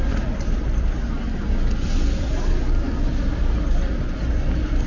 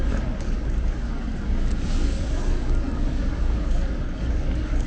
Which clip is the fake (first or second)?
second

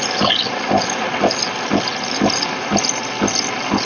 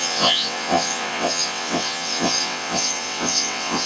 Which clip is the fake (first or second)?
second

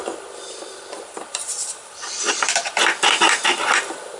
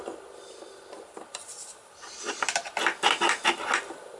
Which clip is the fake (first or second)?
first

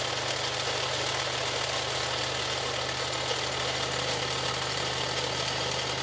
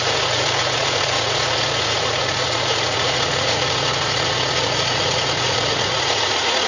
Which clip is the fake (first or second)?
second